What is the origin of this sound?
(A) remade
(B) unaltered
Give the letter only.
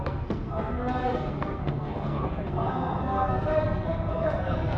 A